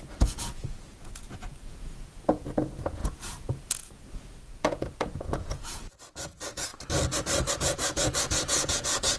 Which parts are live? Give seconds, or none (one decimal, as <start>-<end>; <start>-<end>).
6.7-7.5